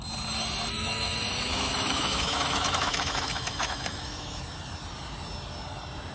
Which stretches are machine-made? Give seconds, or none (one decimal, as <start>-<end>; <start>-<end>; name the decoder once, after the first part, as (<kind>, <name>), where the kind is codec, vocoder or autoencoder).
0.7-4.4 (autoencoder, DAC-VAE)